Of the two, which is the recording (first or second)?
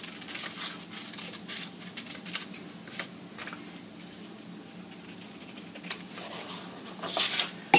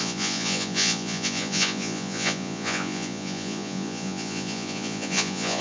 first